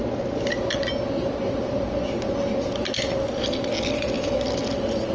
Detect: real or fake real